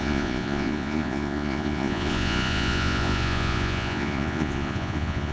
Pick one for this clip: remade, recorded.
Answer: remade